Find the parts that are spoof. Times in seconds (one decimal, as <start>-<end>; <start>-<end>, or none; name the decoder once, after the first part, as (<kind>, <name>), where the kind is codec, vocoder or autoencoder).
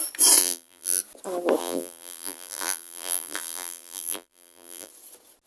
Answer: 0.4-1.0 (vocoder, BigVGAN v2); 1.6-4.9